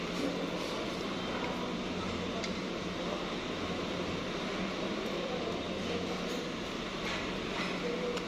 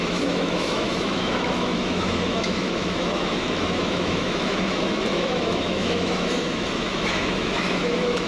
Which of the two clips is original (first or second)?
first